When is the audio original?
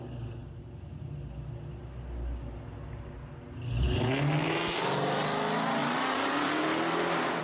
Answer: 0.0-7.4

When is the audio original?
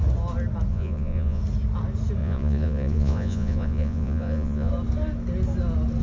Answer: 0.0-0.7; 1.4-2.2; 4.7-6.0